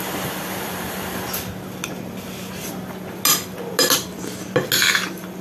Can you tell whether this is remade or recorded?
recorded